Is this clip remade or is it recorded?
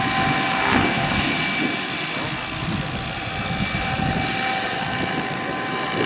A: recorded